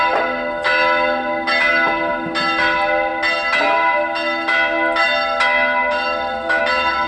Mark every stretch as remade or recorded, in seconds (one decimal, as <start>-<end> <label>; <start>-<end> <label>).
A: 0.0-7.1 recorded